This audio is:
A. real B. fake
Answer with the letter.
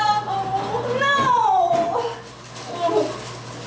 A